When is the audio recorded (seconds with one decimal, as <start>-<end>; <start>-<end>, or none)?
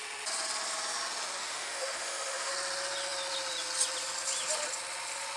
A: 0.0-1.4; 2.5-5.4